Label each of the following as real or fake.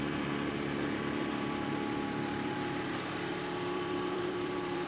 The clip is fake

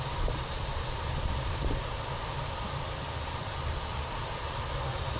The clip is fake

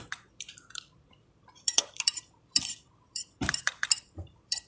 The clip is fake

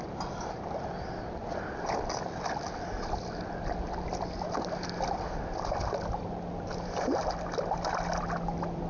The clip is real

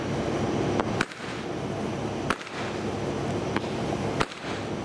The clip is real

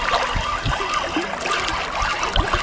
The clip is real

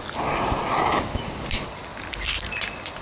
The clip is real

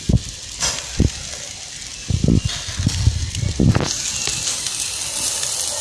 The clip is real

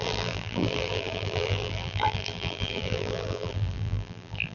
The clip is fake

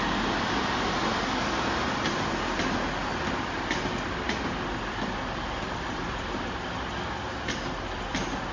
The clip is real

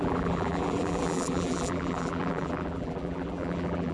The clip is fake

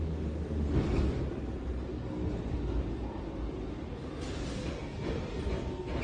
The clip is real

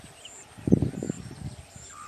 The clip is real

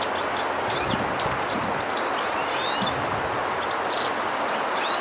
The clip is real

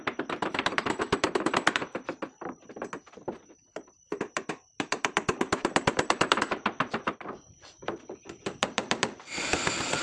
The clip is fake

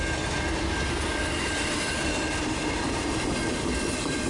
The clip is fake